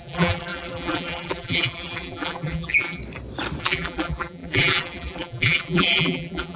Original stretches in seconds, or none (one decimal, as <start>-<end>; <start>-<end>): 3.0-3.6